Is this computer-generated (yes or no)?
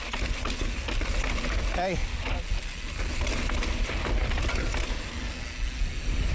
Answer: no